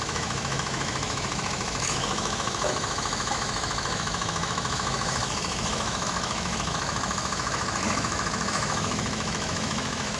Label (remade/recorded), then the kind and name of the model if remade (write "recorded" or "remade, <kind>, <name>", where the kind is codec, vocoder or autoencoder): remade, autoencoder, DAC-VAE